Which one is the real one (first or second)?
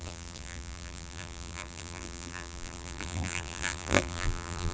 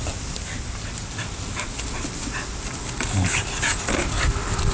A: second